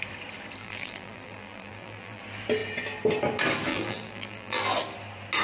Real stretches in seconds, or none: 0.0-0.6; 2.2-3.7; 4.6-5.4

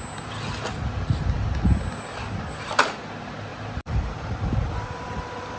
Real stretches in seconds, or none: 0.0-3.5

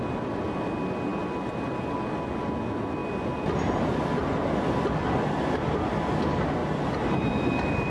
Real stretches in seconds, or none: 0.0-6.6